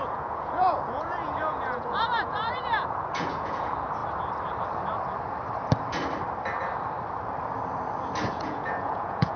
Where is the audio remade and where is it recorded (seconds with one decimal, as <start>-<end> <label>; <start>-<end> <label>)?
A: 0.0-4.0 remade; 4.0-8.3 recorded; 8.3-9.4 remade